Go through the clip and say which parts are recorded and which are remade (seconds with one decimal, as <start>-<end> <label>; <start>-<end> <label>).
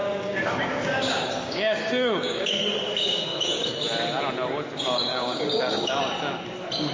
0.0-3.7 remade; 3.7-5.1 recorded; 5.1-6.0 remade; 6.0-6.9 recorded